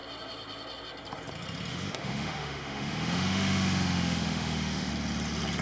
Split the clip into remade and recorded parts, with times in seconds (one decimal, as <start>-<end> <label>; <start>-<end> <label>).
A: 0.0-1.7 recorded; 1.7-4.9 remade; 4.9-5.6 recorded